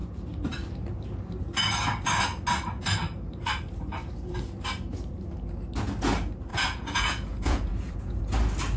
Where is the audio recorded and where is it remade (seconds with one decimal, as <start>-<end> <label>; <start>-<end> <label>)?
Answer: 0.0-6.5 recorded; 6.5-8.2 remade; 8.2-8.8 recorded